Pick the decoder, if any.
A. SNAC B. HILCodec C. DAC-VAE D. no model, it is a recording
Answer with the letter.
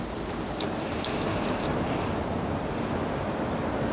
D